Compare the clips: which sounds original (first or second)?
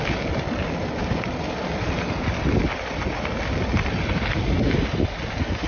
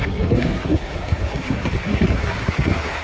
first